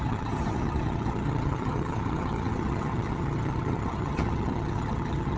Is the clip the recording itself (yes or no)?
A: no